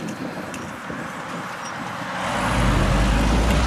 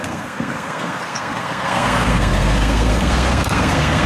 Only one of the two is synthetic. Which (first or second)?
second